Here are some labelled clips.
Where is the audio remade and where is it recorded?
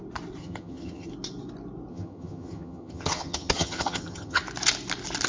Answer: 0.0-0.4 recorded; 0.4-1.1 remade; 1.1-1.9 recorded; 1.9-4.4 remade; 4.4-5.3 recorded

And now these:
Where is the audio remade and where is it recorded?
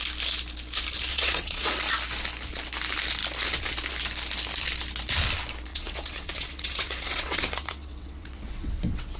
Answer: 0.0-1.1 recorded; 1.1-1.7 remade; 1.7-5.7 recorded; 5.7-9.2 remade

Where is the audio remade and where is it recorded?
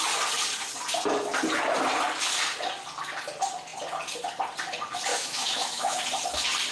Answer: 0.0-5.1 recorded; 5.1-6.0 remade; 6.0-6.7 recorded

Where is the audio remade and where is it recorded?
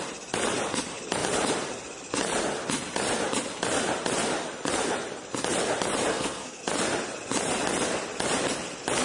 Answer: 0.0-6.1 recorded; 6.1-6.6 remade; 6.6-9.0 recorded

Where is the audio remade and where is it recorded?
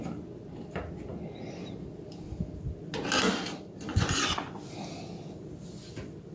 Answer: 0.0-3.9 recorded; 3.9-4.6 remade; 4.6-6.3 recorded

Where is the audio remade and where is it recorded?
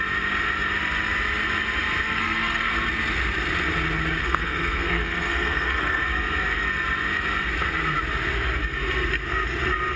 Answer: 0.0-2.1 recorded; 2.1-2.7 remade; 2.7-4.2 recorded; 4.2-6.0 remade; 6.0-10.0 recorded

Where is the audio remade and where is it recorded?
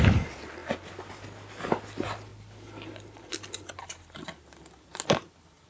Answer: 0.0-5.7 recorded